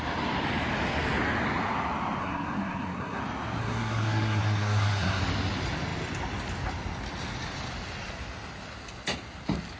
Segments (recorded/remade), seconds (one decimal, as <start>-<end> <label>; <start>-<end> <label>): 0.0-2.2 recorded; 2.2-3.2 remade; 3.2-3.6 recorded; 3.6-5.2 remade; 5.2-9.8 recorded